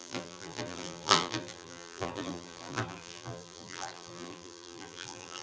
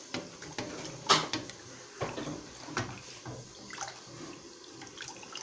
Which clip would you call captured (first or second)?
second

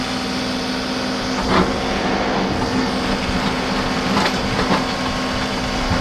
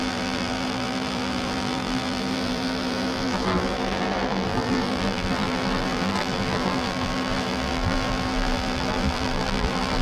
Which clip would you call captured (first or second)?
first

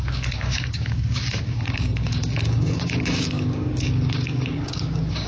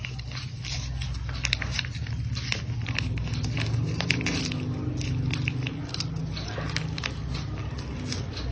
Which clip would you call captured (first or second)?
second